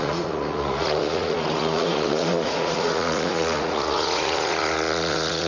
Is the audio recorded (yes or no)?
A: no